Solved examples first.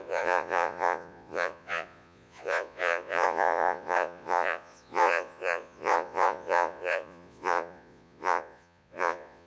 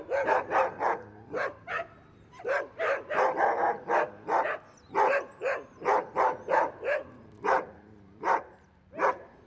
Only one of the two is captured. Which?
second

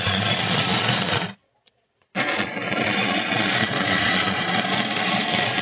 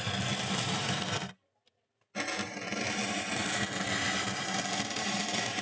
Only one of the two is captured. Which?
second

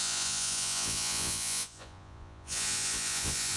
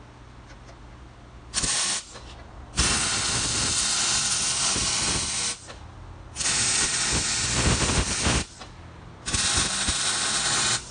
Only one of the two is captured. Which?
second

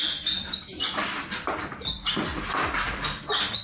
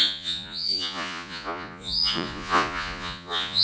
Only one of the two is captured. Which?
first